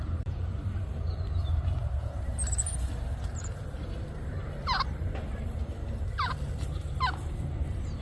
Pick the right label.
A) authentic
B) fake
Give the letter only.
B